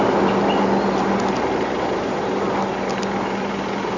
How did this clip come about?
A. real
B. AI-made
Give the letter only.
A